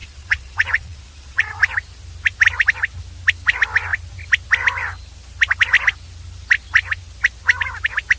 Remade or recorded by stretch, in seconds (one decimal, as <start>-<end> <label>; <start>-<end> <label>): 0.0-1.6 remade; 1.6-8.2 recorded